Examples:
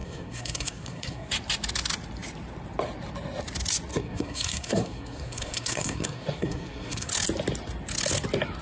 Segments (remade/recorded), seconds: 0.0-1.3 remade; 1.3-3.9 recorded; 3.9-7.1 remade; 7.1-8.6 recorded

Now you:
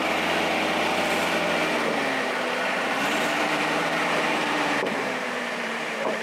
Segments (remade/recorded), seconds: 0.0-2.7 recorded; 2.7-6.2 remade

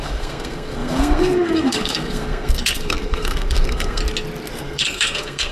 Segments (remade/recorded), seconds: 0.0-4.0 remade; 4.0-4.5 recorded; 4.5-5.5 remade